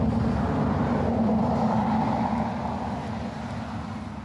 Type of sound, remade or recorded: recorded